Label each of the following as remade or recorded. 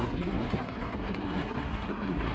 remade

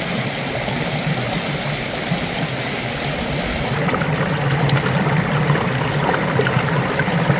recorded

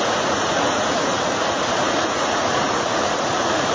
remade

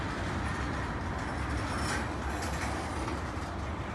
recorded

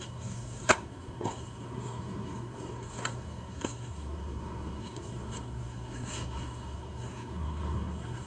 remade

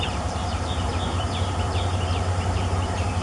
remade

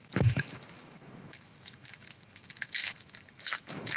remade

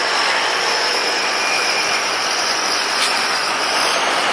remade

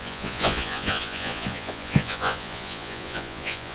remade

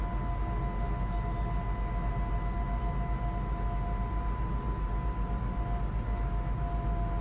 recorded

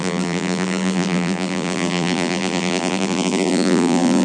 remade